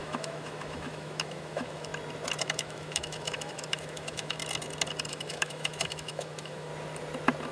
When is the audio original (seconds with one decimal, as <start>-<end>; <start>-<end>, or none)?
1.9-2.4; 4.4-5.1; 6.7-7.5